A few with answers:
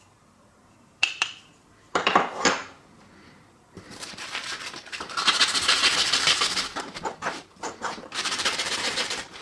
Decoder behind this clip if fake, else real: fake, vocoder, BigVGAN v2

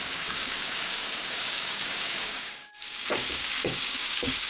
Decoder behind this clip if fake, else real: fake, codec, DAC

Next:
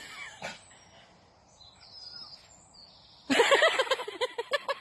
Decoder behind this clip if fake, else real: real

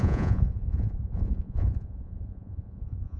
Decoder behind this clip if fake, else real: fake, vocoder, Vocos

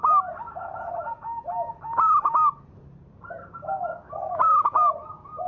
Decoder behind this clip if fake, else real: real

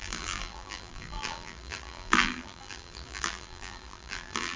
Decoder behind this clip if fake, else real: fake, vocoder, BigVGAN v2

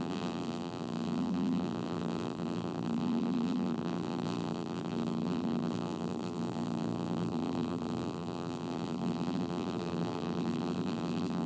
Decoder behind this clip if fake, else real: fake, vocoder, BigVGAN v2